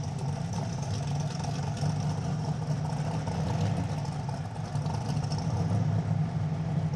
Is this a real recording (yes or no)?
yes